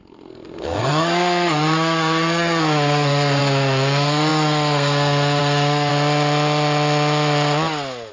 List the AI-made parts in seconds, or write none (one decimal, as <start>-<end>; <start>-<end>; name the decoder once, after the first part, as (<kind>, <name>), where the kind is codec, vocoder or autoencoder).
0.0-5.9 (codec, SNAC)